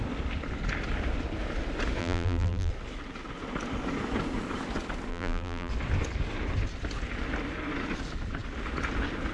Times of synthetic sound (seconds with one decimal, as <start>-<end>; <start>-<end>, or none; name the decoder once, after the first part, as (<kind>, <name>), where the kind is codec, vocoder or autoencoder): 2.0-2.7 (vocoder, BigVGAN v2); 5.1-5.7